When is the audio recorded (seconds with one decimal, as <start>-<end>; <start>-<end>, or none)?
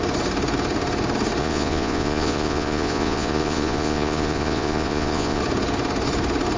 0.0-1.4; 5.4-6.6